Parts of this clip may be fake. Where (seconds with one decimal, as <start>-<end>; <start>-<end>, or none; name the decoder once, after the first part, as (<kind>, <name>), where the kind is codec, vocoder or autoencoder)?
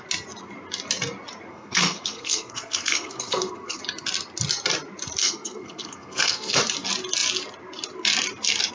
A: 1.5-3.8 (codec, SNAC); 5.2-6.6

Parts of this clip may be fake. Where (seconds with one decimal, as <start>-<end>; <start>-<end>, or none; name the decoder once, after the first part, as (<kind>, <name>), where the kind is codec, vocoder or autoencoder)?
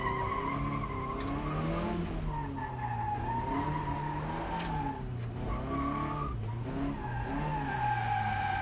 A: none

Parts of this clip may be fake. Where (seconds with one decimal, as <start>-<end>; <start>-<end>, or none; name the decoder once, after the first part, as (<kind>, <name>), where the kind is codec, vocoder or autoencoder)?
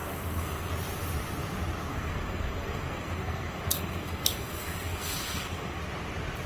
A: 0.0-0.7 (codec, SNAC); 1.9-5.8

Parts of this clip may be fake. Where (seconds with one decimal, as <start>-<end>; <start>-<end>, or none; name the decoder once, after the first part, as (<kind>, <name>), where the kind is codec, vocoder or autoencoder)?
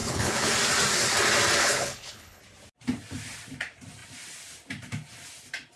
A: 0.0-0.5 (codec, HILCodec); 1.6-2.4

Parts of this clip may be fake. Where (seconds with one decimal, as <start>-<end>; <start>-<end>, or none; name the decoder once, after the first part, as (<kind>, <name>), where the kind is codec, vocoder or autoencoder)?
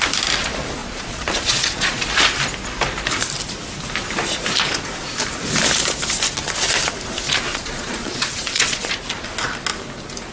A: 0.8-2.0 (vocoder, Vocos); 7.5-8.9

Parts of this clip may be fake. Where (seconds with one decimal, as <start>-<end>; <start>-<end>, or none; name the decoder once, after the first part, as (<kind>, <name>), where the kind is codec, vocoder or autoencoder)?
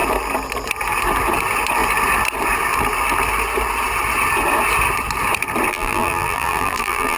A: 5.7-7.2 (vocoder, BigVGAN v2)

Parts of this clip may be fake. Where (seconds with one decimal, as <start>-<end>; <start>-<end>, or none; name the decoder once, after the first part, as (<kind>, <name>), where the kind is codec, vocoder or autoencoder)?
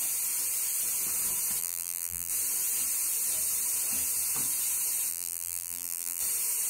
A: 1.6-2.3 (vocoder, BigVGAN v2); 5.1-6.2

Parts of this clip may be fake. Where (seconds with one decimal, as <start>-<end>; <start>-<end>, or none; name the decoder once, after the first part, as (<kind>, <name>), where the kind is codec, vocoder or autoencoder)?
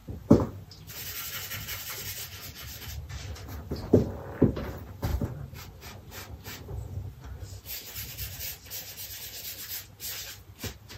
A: 5.1-5.7 (vocoder, BigVGAN v2)